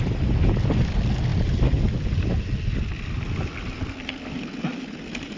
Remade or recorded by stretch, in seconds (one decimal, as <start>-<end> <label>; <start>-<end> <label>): 0.0-5.4 recorded